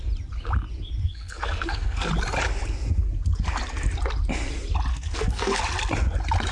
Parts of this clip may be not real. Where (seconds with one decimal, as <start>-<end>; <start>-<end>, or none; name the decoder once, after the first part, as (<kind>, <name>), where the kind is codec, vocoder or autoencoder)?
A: 1.0-2.1 (codec, SNAC); 4.9-5.6